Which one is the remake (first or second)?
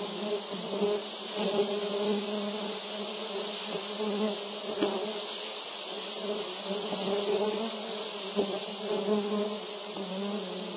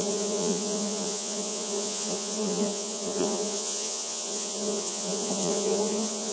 second